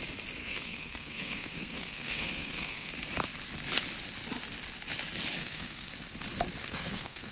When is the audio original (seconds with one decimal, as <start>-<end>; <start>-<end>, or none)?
0.0-0.4; 2.9-5.4; 5.9-6.6